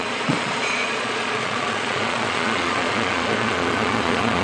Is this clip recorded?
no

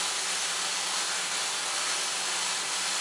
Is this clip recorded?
yes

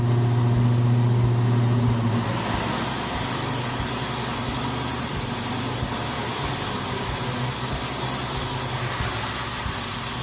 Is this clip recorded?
yes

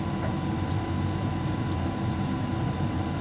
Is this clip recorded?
yes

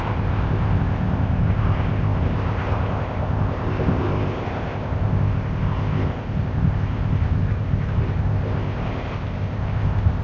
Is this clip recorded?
no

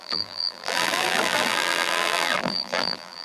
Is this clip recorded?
no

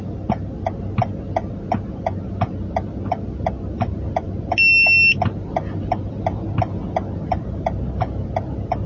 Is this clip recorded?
yes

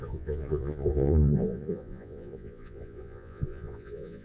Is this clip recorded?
no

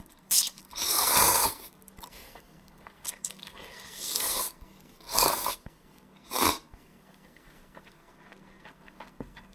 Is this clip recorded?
no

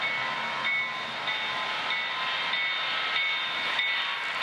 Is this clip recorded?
yes